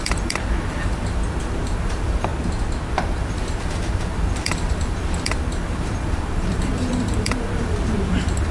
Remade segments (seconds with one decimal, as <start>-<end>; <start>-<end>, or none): 0.0-2.3; 2.9-8.5